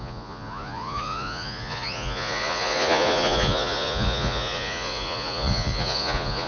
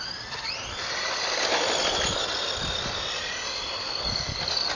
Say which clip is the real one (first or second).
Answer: second